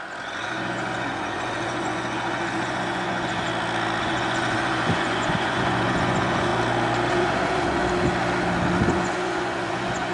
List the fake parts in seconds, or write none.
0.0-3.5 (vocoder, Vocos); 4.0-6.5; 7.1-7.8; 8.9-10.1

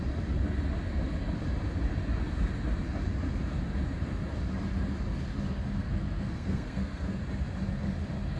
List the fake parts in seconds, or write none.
5.8-7.2 (codec, SNAC)